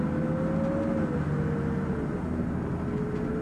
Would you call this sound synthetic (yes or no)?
no